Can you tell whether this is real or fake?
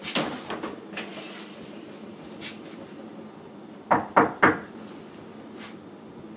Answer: real